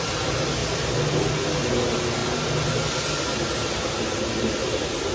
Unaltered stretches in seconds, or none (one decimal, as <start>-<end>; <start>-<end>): 0.0-5.1